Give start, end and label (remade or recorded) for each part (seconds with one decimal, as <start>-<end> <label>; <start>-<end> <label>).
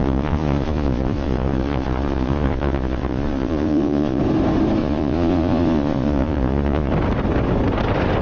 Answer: 0.0-4.2 remade; 4.2-4.8 recorded; 4.8-6.9 remade; 6.9-8.2 recorded